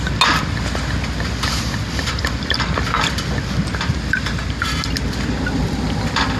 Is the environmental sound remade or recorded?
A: recorded